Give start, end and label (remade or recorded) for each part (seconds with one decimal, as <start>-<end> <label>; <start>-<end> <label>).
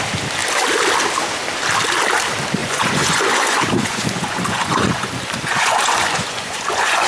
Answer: 0.0-2.6 recorded; 2.6-7.1 remade